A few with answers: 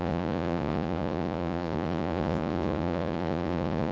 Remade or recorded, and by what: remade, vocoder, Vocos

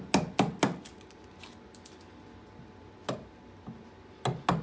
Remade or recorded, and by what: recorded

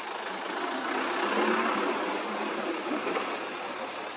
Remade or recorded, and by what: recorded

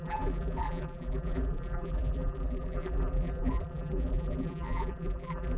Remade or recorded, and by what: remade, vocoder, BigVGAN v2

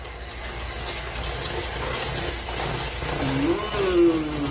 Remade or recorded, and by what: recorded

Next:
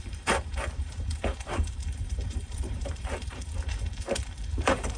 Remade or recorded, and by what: remade, vocoder, BigVGAN v2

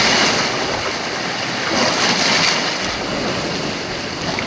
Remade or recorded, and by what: recorded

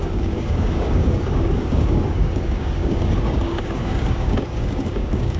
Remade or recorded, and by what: remade, codec, DAC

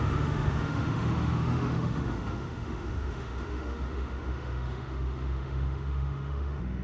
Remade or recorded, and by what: remade, autoencoder, DAC-VAE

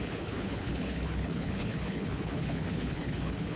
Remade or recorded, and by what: remade, codec, HILCodec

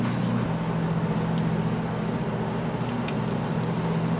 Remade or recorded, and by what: recorded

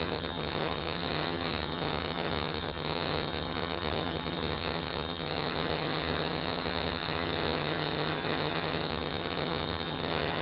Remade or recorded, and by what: remade, vocoder, HiFi-GAN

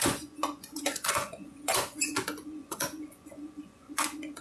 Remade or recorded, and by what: remade, vocoder, Vocos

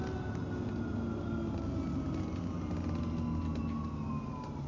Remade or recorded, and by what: recorded